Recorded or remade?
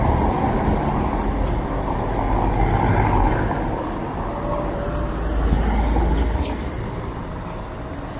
recorded